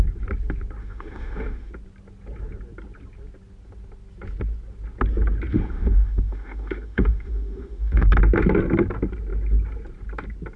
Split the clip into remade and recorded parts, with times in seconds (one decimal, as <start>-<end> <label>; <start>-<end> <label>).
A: 0.0-0.8 recorded; 0.8-1.7 remade; 1.7-5.5 recorded; 5.5-8.1 remade; 8.1-10.6 recorded